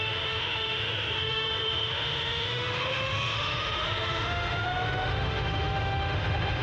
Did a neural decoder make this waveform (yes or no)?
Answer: yes